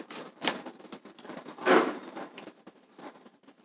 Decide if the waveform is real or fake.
fake